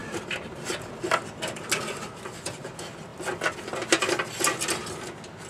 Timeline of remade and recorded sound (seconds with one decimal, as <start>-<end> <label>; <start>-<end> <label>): 0.0-5.5 recorded